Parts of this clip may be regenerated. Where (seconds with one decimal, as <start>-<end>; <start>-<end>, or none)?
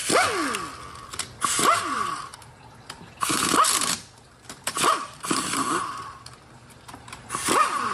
1.5-2.3; 4.2-7.9